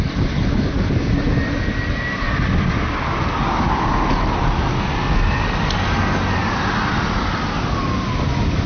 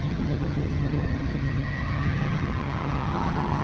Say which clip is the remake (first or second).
second